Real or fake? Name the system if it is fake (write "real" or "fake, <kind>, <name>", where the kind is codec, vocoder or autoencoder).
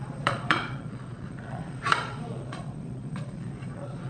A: fake, vocoder, Vocos